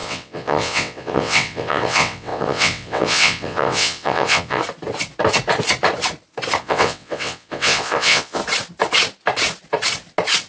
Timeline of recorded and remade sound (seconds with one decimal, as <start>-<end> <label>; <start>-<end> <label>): 0.0-4.6 remade; 4.6-6.6 recorded; 6.6-8.4 remade; 8.4-10.5 recorded